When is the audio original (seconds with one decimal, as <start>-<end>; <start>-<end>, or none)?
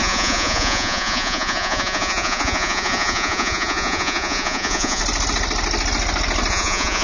5.0-6.5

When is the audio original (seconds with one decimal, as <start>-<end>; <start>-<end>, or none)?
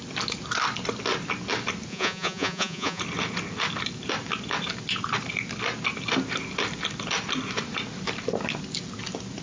0.0-1.9; 3.0-9.4